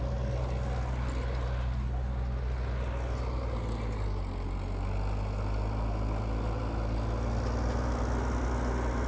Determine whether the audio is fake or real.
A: real